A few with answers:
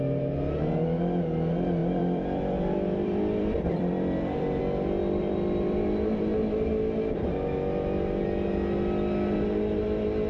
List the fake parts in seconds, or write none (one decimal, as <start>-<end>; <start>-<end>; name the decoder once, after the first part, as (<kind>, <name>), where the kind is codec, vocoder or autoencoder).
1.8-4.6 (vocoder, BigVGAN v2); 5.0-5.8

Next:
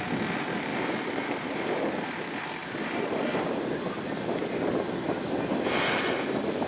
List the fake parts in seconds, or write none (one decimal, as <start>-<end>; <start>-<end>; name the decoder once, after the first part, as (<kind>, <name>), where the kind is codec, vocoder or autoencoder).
0.7-1.7 (vocoder, BigVGAN v2); 2.6-4.4

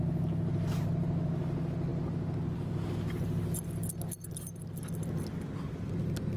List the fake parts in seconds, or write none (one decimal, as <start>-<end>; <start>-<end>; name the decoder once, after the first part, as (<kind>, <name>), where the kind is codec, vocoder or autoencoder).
none

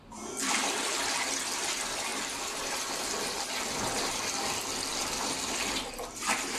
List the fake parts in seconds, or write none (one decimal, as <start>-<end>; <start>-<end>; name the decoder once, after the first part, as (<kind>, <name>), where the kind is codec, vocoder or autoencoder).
none

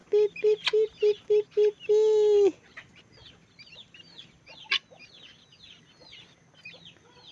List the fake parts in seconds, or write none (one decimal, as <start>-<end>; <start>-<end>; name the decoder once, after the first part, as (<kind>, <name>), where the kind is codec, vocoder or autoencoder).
none